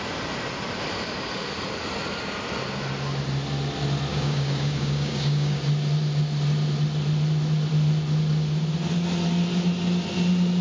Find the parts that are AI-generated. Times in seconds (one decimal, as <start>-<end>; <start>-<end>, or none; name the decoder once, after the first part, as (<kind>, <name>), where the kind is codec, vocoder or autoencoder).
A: 4.1-5.6 (codec, DAC)